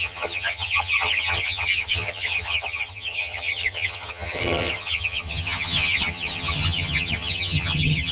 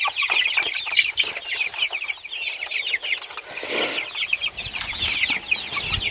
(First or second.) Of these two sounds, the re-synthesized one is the first